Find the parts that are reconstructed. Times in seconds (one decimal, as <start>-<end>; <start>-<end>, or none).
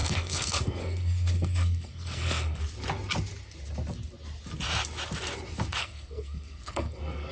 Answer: 0.0-2.6; 5.8-7.3